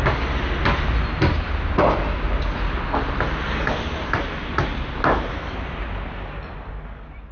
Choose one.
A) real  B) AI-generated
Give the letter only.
A